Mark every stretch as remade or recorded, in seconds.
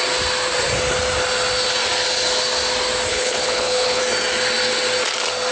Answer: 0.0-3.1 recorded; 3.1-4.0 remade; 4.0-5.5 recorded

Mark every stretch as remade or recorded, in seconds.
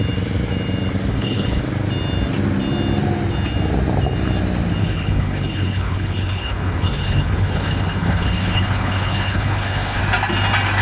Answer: 0.0-1.1 recorded; 1.1-1.6 remade; 1.6-4.8 recorded; 4.8-10.0 remade; 10.0-10.8 recorded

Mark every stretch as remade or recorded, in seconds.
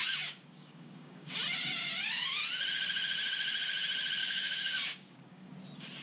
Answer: 0.0-1.3 remade; 1.3-4.2 recorded; 4.2-5.5 remade; 5.5-6.0 recorded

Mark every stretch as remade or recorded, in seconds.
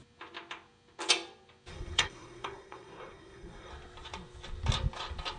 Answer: 0.0-1.7 recorded; 1.7-3.7 remade; 3.7-5.4 recorded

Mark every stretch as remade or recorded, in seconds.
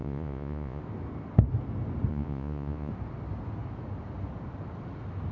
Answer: 0.0-0.8 remade; 0.8-2.1 recorded; 2.1-2.9 remade; 2.9-5.3 recorded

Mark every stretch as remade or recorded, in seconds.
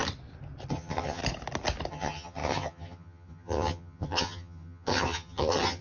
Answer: 0.0-0.7 recorded; 0.7-1.2 remade; 1.2-1.9 recorded; 1.9-5.8 remade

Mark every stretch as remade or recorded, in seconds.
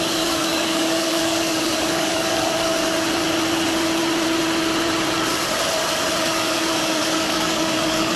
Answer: 0.0-2.7 remade; 2.7-6.2 recorded; 6.2-8.2 remade